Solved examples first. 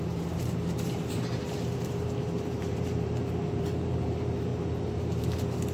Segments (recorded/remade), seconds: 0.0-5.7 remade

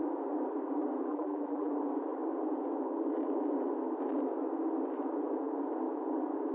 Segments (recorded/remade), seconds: 0.0-1.1 recorded; 1.1-1.7 remade; 1.7-6.5 recorded